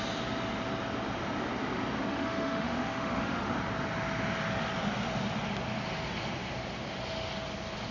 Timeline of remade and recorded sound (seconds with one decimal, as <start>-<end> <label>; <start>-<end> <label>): 0.0-2.1 recorded; 2.1-3.5 remade; 3.5-7.9 recorded